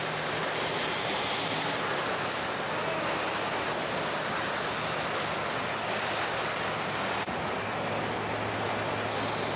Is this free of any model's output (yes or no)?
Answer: yes